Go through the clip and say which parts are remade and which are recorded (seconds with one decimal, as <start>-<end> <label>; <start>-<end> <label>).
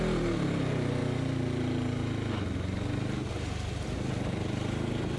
0.0-5.2 recorded